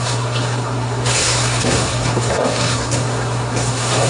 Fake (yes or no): yes